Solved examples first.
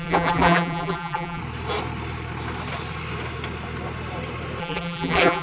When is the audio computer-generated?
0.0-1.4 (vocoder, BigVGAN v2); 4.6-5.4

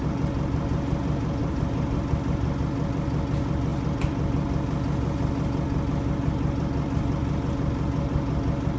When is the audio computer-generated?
1.4-2.1 (vocoder, BigVGAN v2)

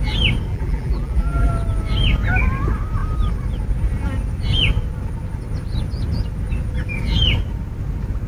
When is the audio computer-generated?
0.5-1.5 (vocoder, BigVGAN v2)

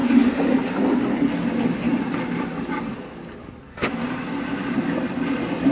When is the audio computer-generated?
none

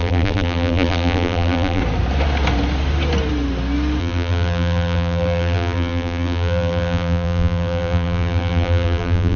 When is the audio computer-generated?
0.0-1.8 (vocoder, BigVGAN v2); 4.0-9.4

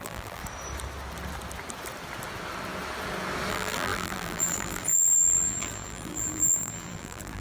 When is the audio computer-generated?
0.0-0.4 (vocoder, BigVGAN v2); 3.5-7.4

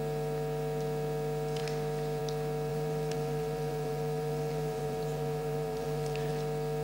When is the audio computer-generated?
2.7-6.3 (vocoder, BigVGAN v2)

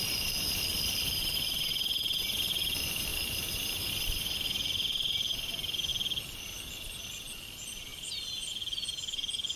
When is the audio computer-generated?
0.0-5.9 (vocoder, BigVGAN v2); 6.8-9.6